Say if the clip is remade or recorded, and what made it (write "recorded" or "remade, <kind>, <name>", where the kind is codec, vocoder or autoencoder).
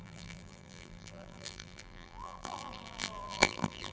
remade, vocoder, BigVGAN v2